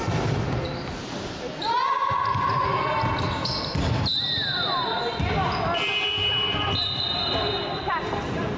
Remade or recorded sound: recorded